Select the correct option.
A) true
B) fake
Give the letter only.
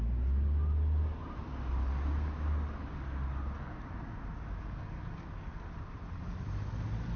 A